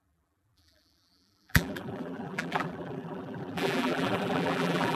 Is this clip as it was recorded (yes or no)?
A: no